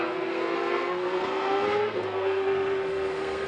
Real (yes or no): no